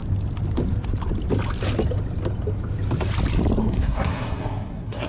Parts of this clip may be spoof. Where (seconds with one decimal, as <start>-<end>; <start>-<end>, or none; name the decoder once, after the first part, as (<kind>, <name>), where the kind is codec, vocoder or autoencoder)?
3.6-5.1 (codec, SNAC)